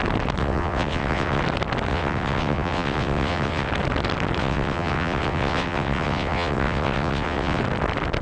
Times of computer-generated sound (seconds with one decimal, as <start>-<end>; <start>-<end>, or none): 0.4-1.4; 1.9-3.7; 4.4-7.6